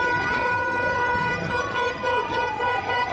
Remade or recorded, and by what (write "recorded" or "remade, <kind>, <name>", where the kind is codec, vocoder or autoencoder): remade, vocoder, HiFi-GAN